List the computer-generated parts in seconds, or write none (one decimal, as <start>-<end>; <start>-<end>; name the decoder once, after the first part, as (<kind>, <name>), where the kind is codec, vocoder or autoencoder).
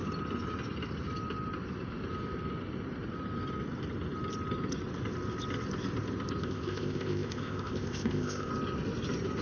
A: 6.4-8.5 (codec, ZipCodec)